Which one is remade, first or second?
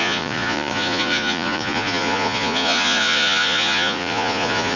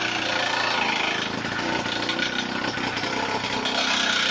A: first